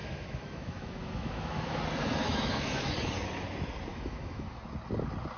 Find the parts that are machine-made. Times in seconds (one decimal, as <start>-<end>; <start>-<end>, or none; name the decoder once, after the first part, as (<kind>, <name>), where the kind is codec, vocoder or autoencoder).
0.0-1.8 (autoencoder, DAC-VAE); 2.2-2.9; 3.9-4.6